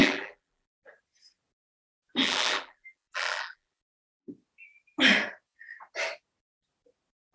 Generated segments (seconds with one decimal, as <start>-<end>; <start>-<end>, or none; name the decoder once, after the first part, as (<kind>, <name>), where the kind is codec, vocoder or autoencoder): 0.0-0.8 (vocoder, BigVGAN v2); 2.2-4.3